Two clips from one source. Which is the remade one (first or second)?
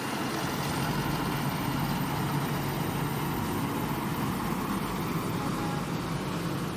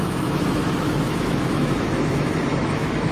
second